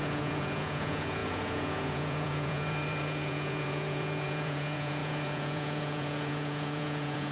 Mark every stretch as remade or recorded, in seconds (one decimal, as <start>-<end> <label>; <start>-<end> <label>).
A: 0.0-7.3 remade